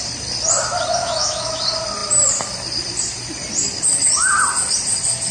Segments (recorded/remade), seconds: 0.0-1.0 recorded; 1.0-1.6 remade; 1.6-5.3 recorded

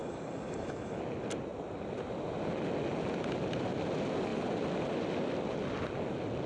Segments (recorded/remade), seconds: 0.0-1.0 remade; 1.0-6.5 recorded

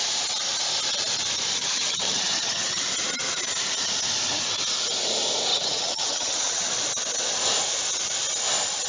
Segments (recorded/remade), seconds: 0.0-1.5 recorded; 1.5-2.8 remade; 2.8-5.5 recorded; 5.5-6.7 remade; 6.7-8.9 recorded